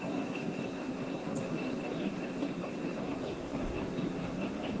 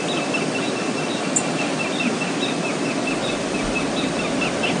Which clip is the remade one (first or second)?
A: first